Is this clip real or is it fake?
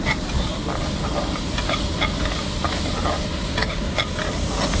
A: real